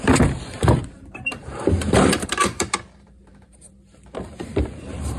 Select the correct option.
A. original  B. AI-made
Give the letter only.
B